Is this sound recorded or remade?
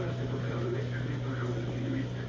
recorded